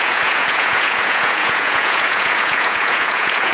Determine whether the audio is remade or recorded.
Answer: remade